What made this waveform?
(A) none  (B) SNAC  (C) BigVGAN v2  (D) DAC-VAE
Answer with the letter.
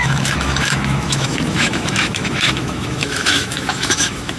D